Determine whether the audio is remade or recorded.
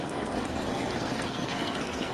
remade